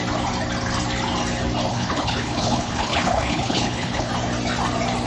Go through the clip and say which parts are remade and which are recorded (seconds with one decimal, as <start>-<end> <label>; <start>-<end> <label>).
0.0-1.7 recorded; 1.7-4.1 remade; 4.1-5.1 recorded